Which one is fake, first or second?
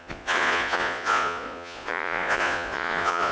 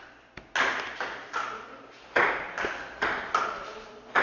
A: first